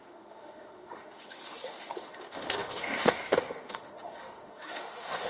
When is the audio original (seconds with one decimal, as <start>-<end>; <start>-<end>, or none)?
none